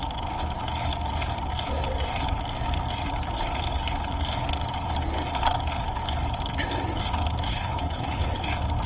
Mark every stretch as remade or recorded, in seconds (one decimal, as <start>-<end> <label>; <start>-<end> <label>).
0.0-7.5 recorded; 7.5-8.3 remade; 8.3-8.9 recorded